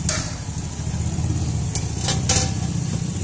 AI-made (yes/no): no